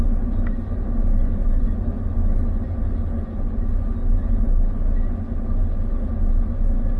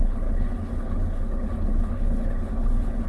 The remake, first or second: second